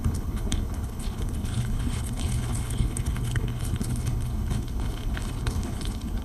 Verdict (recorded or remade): remade